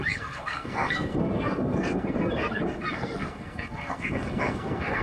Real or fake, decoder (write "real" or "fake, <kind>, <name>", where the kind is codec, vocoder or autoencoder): fake, codec, SNAC